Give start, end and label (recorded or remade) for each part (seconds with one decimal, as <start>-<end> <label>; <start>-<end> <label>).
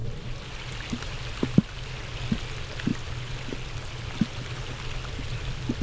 0.0-5.8 recorded